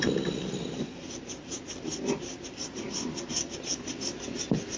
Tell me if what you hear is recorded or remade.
recorded